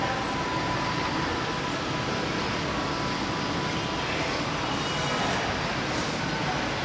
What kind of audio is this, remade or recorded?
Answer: recorded